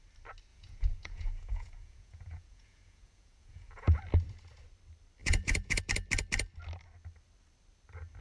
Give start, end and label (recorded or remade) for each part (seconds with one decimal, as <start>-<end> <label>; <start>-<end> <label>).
0.0-0.5 recorded; 0.5-4.0 remade; 4.0-5.2 recorded; 5.2-5.8 remade; 5.8-8.2 recorded